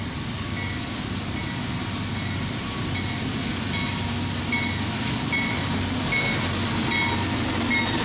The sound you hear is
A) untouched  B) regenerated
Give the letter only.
A